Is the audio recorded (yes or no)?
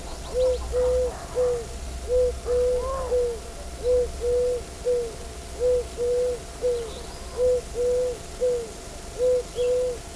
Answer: yes